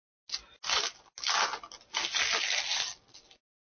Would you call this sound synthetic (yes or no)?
no